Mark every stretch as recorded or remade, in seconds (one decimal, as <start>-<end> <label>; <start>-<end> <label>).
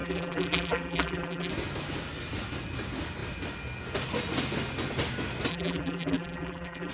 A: 0.0-1.5 remade; 1.5-5.5 recorded; 5.5-6.9 remade